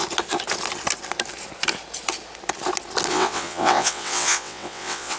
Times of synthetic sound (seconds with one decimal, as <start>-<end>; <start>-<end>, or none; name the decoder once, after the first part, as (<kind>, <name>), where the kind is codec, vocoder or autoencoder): 3.1-5.2 (vocoder, WaveNeXt)